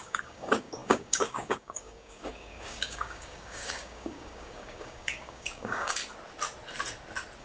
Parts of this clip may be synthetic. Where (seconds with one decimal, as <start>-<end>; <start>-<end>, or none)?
0.0-6.0